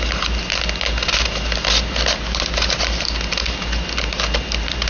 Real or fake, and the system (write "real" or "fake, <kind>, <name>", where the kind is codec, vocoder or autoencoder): real